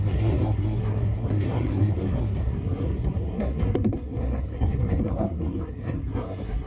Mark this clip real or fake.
fake